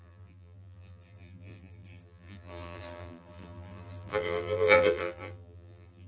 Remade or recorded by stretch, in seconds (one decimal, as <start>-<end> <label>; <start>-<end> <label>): 0.0-6.1 remade